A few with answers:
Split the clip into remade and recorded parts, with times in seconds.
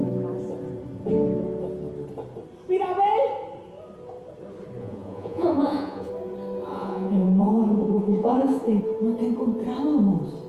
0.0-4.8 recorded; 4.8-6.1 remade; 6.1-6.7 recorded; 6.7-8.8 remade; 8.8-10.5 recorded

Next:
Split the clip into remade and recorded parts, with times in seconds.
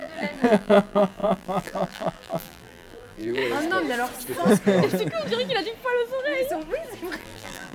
0.0-3.4 remade; 3.4-7.2 recorded; 7.2-7.7 remade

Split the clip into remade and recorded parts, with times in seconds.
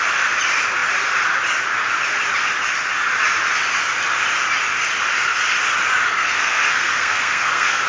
0.0-6.1 recorded; 6.1-7.9 remade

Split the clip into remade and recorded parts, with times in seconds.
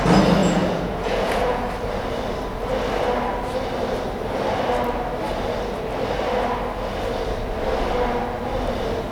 0.0-0.4 recorded; 0.4-1.6 remade; 1.6-9.1 recorded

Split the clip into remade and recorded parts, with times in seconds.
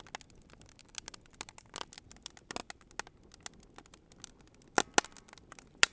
0.0-5.9 recorded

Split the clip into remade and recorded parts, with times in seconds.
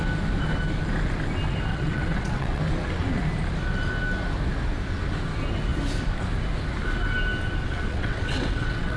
0.0-1.7 recorded; 1.7-2.6 remade; 2.6-7.6 recorded; 7.6-9.0 remade